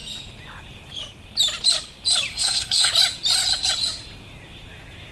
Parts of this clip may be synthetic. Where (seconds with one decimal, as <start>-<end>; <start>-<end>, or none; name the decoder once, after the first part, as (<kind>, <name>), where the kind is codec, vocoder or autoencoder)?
2.3-2.9 (codec, SNAC)

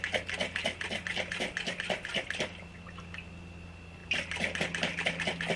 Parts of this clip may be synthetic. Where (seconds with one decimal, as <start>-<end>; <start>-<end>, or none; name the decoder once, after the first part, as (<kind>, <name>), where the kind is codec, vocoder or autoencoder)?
none

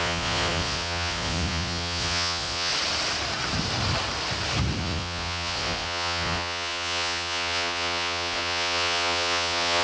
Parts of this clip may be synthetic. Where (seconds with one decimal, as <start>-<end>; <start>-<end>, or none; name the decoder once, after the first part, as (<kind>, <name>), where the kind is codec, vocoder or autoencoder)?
0.0-2.7 (vocoder, Vocos); 4.8-9.8

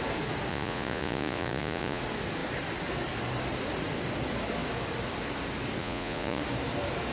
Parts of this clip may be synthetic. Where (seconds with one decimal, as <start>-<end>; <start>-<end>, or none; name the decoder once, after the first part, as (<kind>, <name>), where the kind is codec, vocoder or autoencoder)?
0.5-2.0 (vocoder, Vocos); 5.8-6.4